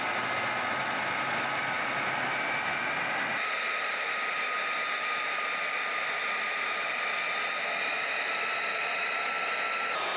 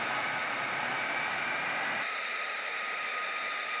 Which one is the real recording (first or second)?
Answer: first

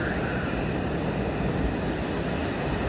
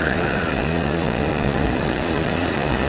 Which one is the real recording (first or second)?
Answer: first